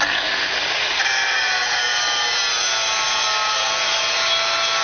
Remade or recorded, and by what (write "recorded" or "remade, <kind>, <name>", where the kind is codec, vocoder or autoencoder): recorded